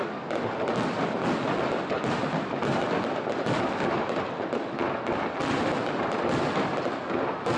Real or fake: real